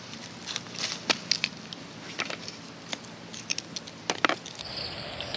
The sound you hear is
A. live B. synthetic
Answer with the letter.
B